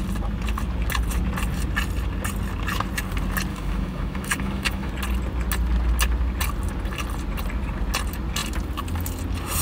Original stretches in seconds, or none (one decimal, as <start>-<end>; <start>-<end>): 0.0-3.5; 4.9-9.6